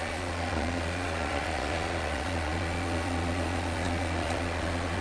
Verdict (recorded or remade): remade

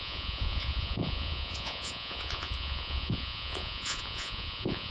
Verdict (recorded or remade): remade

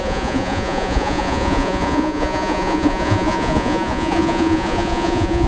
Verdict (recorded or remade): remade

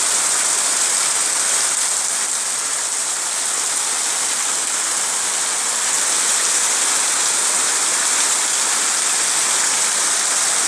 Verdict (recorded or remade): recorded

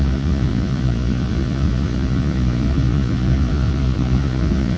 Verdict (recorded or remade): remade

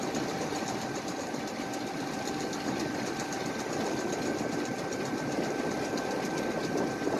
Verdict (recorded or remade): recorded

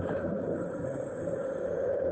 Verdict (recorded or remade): recorded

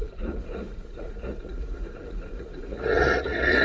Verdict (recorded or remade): remade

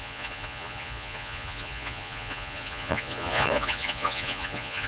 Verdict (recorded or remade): remade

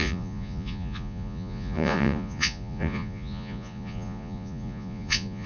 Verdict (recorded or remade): remade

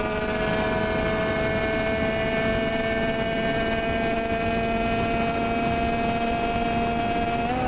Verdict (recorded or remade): recorded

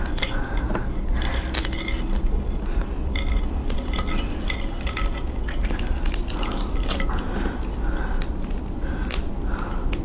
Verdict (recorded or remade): recorded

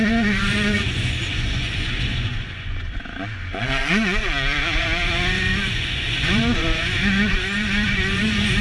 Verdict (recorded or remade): remade